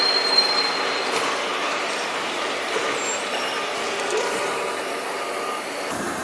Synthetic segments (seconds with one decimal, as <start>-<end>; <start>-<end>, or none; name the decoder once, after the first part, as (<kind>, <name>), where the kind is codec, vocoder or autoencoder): 1.5-5.0 (vocoder, BigVGAN v2)